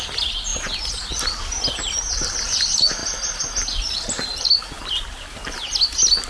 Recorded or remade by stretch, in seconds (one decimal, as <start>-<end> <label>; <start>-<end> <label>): 0.0-6.3 recorded